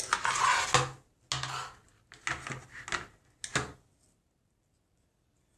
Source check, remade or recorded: recorded